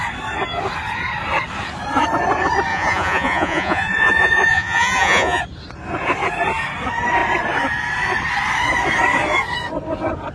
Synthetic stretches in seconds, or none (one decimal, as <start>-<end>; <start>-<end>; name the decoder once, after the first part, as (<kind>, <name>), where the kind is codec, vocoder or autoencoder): 2.7-5.4 (vocoder, Vocos)